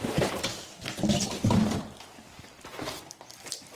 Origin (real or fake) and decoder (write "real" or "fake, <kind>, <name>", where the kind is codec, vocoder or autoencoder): real